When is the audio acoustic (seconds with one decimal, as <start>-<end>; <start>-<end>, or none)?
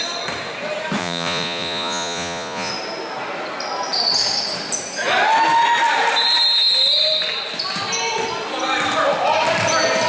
0.0-1.0; 2.7-10.1